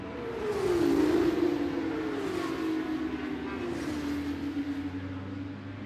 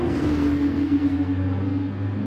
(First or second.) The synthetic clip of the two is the second